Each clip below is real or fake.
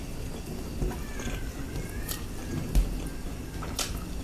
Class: real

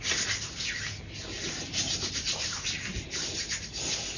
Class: real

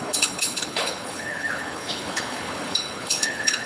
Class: fake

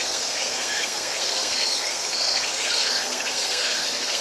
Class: fake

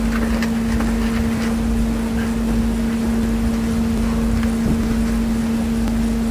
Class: real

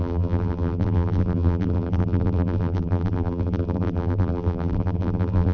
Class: fake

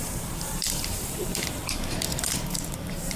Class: fake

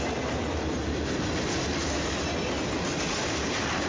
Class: real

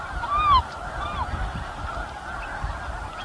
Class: real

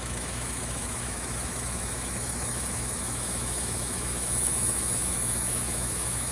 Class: fake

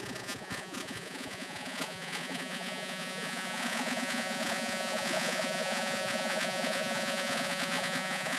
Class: fake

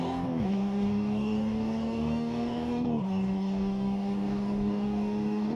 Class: fake